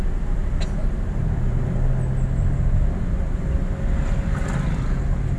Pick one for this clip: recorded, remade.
recorded